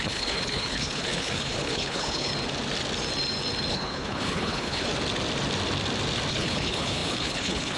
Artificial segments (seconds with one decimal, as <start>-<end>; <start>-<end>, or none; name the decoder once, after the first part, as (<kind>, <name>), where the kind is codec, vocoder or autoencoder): 0.0-2.3 (codec, HILCodec); 3.7-4.9; 6.3-7.8